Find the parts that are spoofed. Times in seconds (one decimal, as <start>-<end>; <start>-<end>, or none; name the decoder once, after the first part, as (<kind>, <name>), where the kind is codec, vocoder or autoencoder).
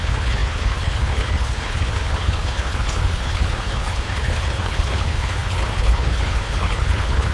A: 0.0-7.3 (codec, HILCodec)